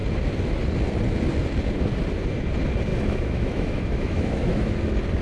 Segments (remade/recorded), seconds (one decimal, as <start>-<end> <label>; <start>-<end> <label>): 0.0-2.9 recorded; 2.9-4.7 remade; 4.7-5.2 recorded